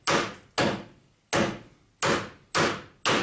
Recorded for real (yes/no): yes